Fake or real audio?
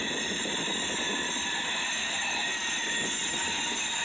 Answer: real